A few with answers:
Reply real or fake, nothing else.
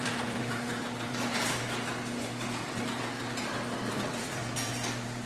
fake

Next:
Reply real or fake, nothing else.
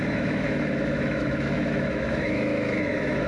fake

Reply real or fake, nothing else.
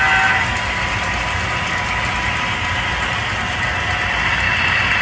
real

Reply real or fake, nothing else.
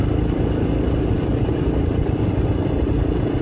real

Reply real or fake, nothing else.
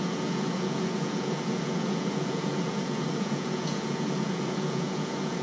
fake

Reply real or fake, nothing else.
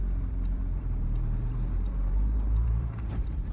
fake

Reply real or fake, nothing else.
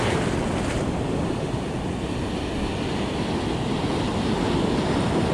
real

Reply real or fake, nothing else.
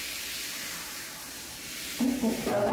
fake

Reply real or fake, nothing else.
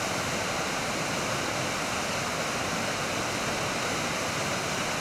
real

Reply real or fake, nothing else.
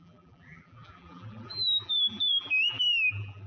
fake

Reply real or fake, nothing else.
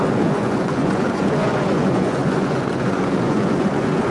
fake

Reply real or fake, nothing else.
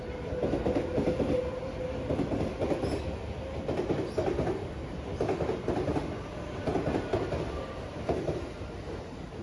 real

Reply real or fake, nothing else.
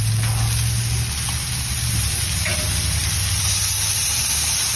real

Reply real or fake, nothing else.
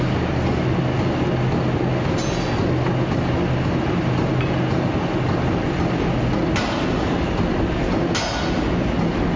real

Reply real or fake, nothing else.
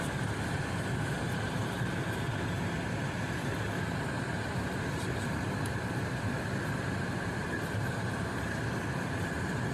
real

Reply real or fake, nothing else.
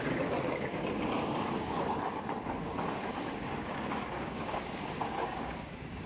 fake